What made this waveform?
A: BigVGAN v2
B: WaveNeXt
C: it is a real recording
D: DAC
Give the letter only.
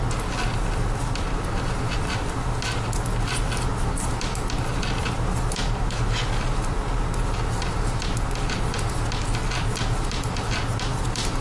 C